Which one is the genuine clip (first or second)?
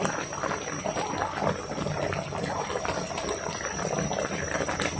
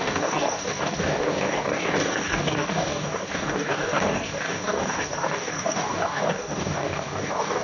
first